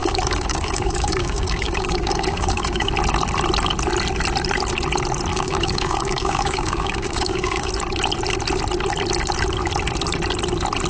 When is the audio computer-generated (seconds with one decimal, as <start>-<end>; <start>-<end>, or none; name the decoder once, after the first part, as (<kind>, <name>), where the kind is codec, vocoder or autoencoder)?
0.0-2.9 (codec, DAC); 5.3-7.7